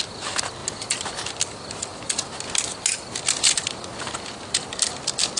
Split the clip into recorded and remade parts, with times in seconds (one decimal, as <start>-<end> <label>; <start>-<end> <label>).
0.0-5.4 recorded